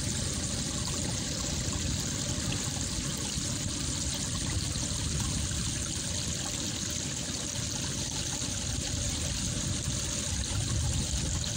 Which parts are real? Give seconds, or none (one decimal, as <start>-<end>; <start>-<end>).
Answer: 0.0-11.6